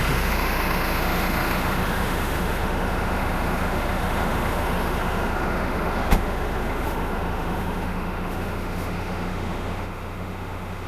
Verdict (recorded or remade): remade